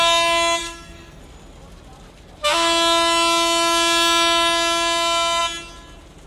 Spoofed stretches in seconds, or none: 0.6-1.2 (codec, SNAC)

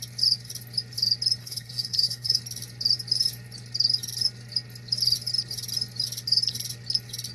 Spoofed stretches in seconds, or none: 1.4-2.4 (codec, SNAC)

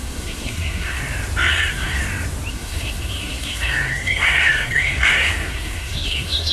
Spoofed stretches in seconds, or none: 0.0-1.0 (codec, SNAC); 1.5-2.0; 2.5-6.5

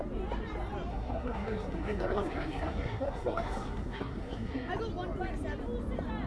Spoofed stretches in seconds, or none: 0.9-4.7 (codec, SNAC)

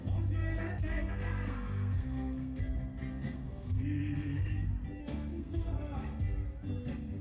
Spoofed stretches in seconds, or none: 0.4-2.6 (codec, SNAC); 3.1-4.5; 5.0-6.2

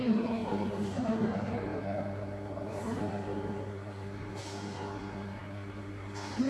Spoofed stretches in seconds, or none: 0.0-6.5 (codec, SNAC)